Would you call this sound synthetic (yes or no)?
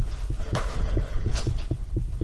yes